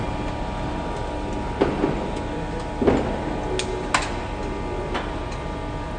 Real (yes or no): yes